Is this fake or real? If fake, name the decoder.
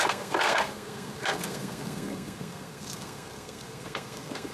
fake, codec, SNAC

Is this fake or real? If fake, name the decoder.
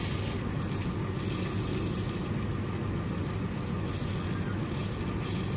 real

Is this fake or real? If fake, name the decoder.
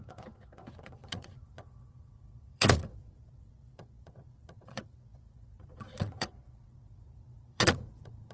fake, vocoder, Vocos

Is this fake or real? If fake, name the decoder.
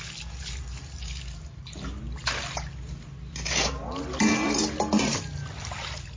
real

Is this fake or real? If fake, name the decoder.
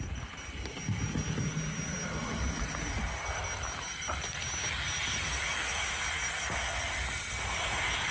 real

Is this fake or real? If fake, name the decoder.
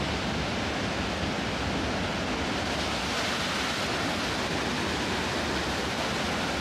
real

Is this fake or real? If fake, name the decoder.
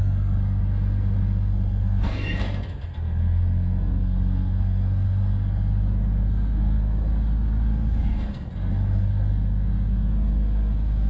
fake, codec, SNAC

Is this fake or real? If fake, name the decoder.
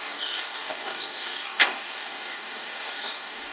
fake, codec, DAC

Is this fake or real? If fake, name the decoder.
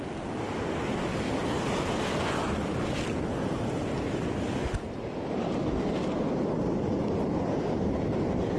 real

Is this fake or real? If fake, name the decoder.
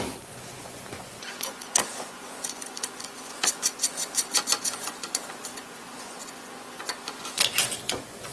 fake, vocoder, Vocos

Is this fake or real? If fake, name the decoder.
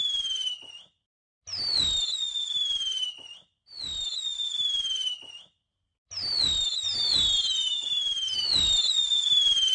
real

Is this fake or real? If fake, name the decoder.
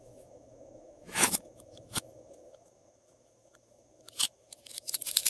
fake, autoencoder, DAC-VAE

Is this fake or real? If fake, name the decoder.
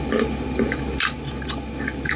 real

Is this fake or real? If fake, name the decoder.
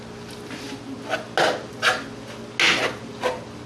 real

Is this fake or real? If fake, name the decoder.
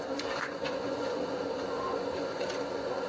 fake, vocoder, Vocos